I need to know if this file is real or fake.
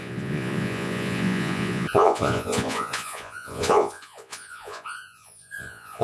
fake